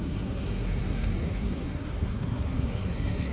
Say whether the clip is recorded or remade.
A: remade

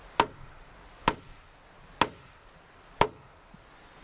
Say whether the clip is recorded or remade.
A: recorded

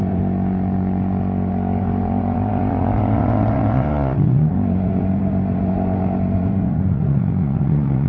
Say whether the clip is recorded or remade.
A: remade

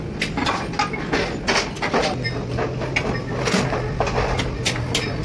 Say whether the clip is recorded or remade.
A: recorded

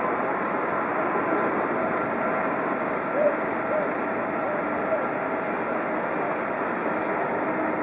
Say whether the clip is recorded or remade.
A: recorded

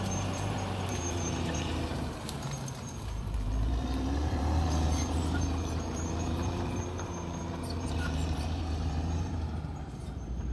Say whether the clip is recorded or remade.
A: remade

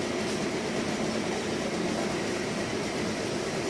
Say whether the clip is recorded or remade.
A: recorded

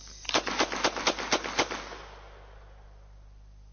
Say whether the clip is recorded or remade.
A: recorded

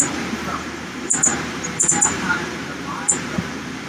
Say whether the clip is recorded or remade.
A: remade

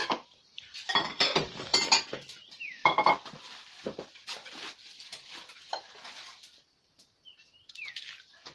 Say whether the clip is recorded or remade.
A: recorded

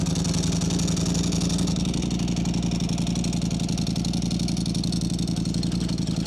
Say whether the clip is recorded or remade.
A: recorded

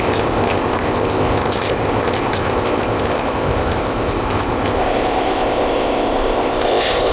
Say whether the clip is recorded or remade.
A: remade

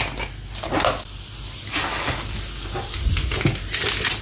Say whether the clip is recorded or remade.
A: recorded